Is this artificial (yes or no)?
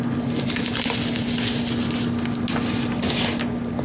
no